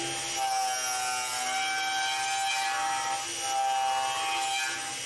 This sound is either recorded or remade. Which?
recorded